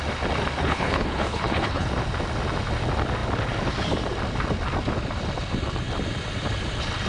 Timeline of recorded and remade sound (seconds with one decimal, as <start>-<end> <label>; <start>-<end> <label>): 0.0-0.6 recorded; 0.6-1.9 remade; 1.9-7.1 recorded